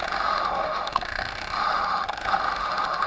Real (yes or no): no